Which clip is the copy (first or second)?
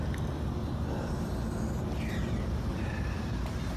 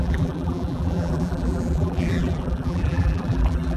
second